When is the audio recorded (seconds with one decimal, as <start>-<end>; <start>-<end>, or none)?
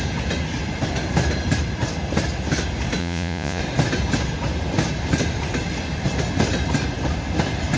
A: 0.0-3.0; 3.6-7.8